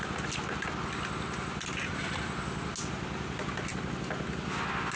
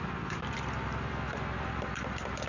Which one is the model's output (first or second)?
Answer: second